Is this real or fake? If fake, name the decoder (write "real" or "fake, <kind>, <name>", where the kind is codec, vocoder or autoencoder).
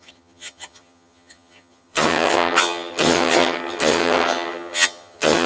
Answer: fake, vocoder, HiFi-GAN